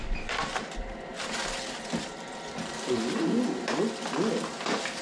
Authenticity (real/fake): real